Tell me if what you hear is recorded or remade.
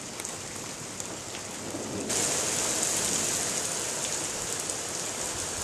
recorded